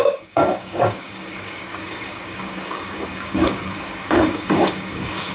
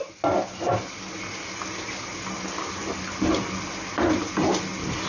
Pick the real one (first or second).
second